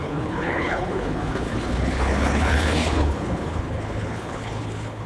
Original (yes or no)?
no